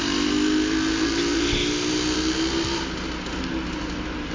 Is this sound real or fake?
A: real